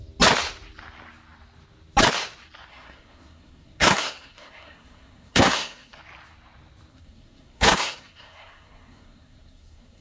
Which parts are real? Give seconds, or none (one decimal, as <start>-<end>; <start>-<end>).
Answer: 0.0-2.7; 6.0-6.9